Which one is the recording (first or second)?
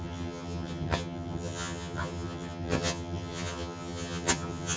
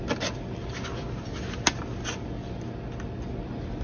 second